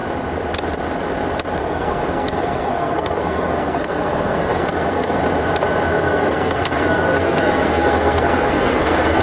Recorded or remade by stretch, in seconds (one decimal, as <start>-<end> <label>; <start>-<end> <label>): 0.0-1.6 recorded; 1.6-5.2 remade; 5.2-5.9 recorded; 5.9-9.2 remade